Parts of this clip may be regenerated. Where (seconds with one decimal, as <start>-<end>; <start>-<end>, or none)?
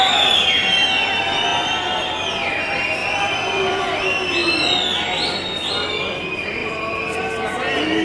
3.0-3.8; 6.6-7.2